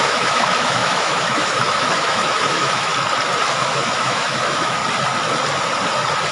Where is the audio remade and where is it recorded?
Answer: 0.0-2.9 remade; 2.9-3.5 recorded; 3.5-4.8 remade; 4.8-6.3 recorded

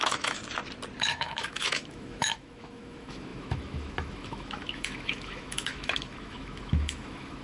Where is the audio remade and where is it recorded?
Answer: 0.0-0.4 remade; 0.4-1.0 recorded; 1.0-7.4 remade

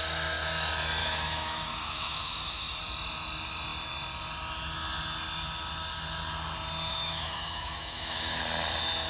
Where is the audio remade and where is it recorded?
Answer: 0.0-1.0 recorded; 1.0-2.8 remade; 2.8-6.9 recorded; 6.9-8.4 remade; 8.4-9.1 recorded

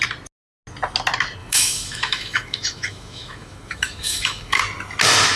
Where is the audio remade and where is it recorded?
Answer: 0.0-1.4 recorded; 1.4-4.6 remade; 4.6-5.4 recorded

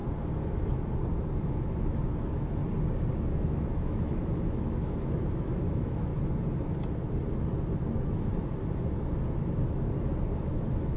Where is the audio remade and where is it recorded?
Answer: 0.0-1.4 recorded; 1.4-2.6 remade; 2.6-3.3 recorded; 3.3-6.1 remade; 6.1-10.5 recorded; 10.5-11.0 remade

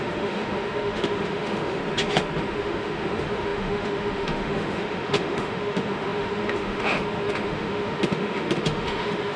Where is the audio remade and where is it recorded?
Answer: 0.0-1.8 remade; 1.8-2.4 recorded; 2.4-9.4 remade

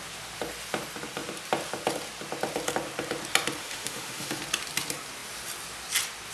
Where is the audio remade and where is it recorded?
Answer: 0.0-3.6 recorded; 3.6-4.4 remade; 4.4-6.3 recorded